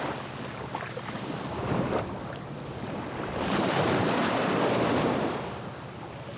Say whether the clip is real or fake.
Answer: real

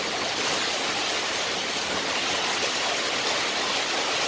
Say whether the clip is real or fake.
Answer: real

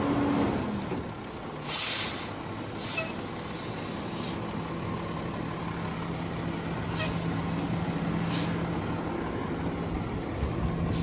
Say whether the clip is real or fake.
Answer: real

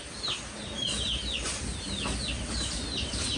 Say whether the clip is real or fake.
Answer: real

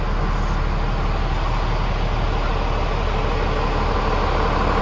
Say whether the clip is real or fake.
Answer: real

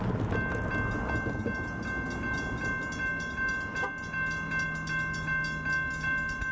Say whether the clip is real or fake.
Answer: real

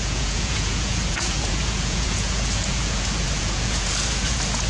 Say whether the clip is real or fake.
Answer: fake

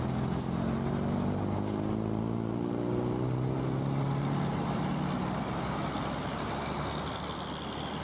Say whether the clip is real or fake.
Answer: real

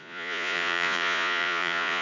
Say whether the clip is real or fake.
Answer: fake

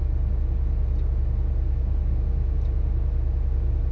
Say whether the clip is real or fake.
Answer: real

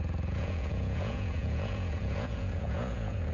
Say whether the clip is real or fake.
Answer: fake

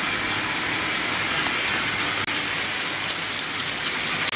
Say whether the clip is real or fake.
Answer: real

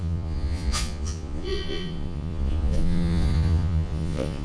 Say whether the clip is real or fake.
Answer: fake